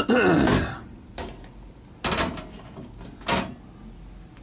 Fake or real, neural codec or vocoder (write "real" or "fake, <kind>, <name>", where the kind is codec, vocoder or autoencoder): real